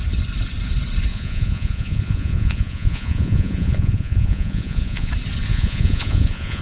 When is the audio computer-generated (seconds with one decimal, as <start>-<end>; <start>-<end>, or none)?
1.1-5.1; 5.5-6.6